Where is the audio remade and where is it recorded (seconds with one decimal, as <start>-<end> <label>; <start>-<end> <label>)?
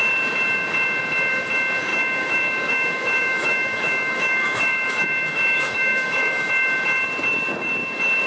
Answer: 0.0-1.9 recorded; 1.9-6.5 remade; 6.5-8.3 recorded